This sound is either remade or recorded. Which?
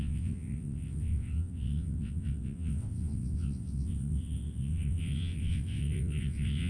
remade